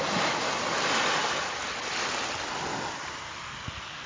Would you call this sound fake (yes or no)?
no